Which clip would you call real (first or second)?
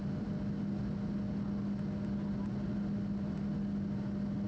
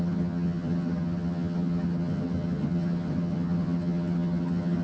first